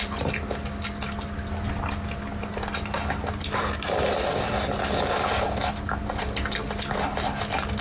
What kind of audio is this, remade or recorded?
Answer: recorded